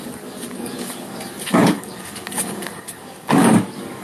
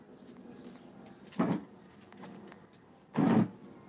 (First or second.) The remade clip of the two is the first